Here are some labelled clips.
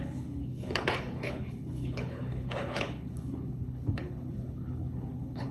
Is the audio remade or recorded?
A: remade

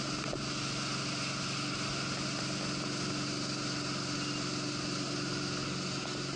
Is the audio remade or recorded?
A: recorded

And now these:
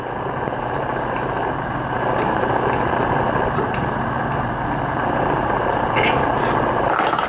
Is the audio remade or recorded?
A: recorded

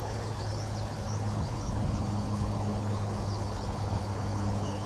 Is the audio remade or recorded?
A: remade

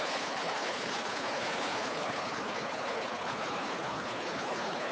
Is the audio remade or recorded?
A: remade